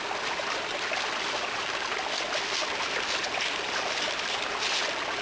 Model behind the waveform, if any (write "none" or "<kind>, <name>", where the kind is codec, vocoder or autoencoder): none